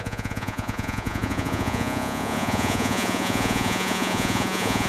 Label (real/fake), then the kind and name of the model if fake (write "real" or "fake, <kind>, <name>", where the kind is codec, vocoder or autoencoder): fake, vocoder, Vocos